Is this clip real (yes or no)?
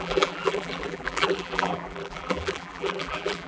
no